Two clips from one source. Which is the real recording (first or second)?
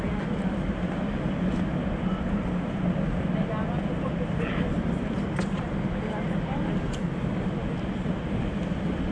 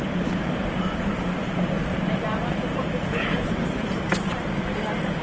first